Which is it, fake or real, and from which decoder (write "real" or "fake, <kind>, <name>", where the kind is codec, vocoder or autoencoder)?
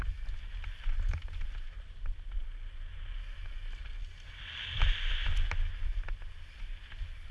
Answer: real